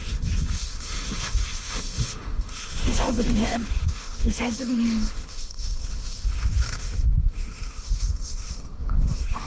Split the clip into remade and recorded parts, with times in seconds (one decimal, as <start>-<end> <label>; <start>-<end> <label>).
0.0-9.5 remade